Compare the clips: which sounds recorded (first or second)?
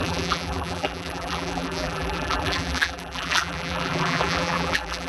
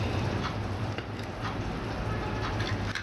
second